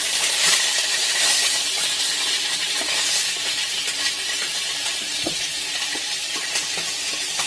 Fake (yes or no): yes